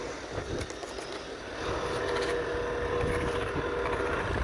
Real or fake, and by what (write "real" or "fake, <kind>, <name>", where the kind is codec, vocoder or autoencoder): real